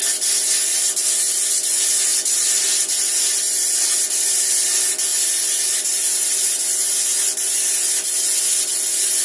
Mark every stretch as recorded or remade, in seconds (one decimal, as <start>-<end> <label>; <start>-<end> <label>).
0.0-2.1 recorded; 2.1-4.0 remade; 4.0-5.1 recorded; 5.1-6.1 remade; 6.1-9.2 recorded